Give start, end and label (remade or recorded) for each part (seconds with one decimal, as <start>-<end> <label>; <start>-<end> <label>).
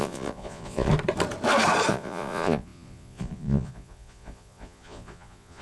0.0-0.9 remade; 0.9-1.9 recorded; 1.9-5.6 remade